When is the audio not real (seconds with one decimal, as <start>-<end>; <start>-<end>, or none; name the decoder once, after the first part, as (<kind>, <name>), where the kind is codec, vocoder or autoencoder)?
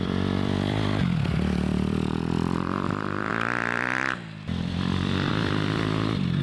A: 0.0-3.3 (vocoder, BigVGAN v2); 5.3-6.4